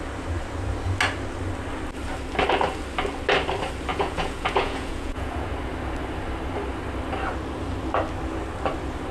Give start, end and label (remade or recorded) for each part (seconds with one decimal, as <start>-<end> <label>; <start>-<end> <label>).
0.0-3.9 recorded; 3.9-5.5 remade; 5.5-9.1 recorded